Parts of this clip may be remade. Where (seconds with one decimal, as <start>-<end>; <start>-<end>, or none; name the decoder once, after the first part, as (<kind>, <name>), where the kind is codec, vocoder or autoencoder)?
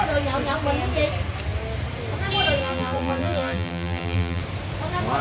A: 2.6-4.4 (vocoder, BigVGAN v2)